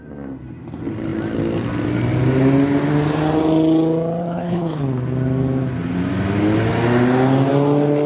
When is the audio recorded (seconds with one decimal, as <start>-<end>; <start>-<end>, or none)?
0.0-4.2; 4.8-8.1